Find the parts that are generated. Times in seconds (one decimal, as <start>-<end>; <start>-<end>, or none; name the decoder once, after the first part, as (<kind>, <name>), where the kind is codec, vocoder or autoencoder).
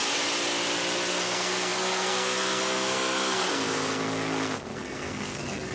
1.1-5.7 (codec, SNAC)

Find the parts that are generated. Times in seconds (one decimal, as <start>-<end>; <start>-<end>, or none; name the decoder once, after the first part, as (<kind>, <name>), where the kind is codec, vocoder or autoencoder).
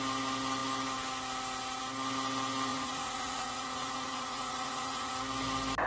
2.7-5.1 (vocoder, Vocos)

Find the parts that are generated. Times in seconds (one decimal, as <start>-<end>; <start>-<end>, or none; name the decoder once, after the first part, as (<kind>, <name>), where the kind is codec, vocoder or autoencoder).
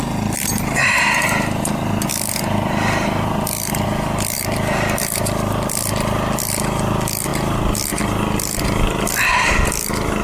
none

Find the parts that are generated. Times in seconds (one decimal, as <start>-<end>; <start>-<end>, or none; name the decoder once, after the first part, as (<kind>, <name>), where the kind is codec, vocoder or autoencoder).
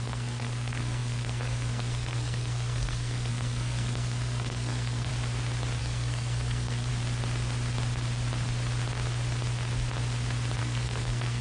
0.0-5.1 (codec, SNAC); 5.8-6.9; 10.6-11.4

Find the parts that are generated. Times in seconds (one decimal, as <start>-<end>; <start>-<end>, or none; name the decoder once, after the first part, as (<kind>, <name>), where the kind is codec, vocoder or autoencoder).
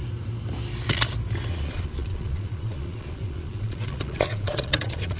1.5-5.2 (vocoder, Vocos)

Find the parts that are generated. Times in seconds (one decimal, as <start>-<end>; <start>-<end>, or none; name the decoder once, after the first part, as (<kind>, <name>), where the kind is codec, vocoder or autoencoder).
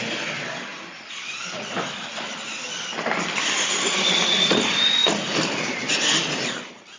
none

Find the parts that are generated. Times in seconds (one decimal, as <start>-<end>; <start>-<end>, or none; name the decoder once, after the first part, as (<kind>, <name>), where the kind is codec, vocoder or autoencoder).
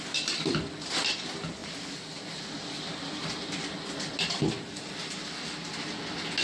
none